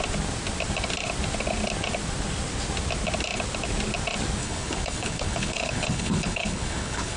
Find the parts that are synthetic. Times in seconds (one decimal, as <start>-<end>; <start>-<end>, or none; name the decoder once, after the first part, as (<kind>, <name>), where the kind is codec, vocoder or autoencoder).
4.4-7.2 (codec, HILCodec)